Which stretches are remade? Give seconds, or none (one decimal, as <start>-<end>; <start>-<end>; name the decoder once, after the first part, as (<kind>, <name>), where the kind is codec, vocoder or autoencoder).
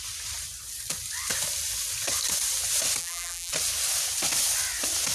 3.0-3.5 (vocoder, BigVGAN v2)